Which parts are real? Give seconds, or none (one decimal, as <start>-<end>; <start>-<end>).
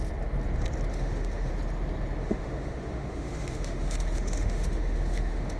0.0-0.9; 1.5-2.2